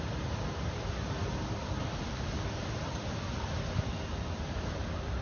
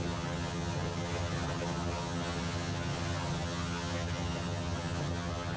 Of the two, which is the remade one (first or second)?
second